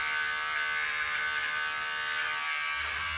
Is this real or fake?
real